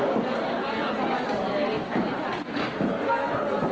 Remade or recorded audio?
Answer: recorded